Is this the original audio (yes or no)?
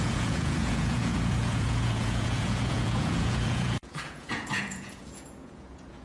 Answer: no